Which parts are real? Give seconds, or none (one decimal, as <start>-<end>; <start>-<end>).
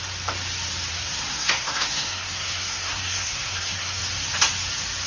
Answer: 0.0-0.9; 4.0-5.1